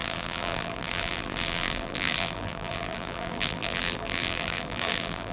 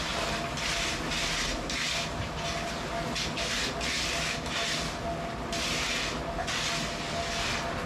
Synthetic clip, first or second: first